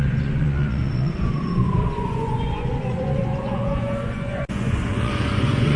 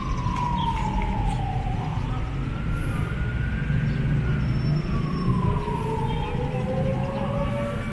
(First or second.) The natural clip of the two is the second